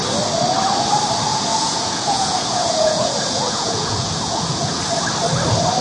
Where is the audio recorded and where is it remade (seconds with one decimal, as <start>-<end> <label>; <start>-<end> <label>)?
0.0-1.3 recorded; 1.3-4.8 remade; 4.8-5.8 recorded